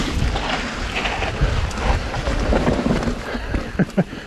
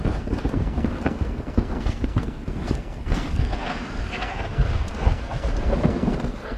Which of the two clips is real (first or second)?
first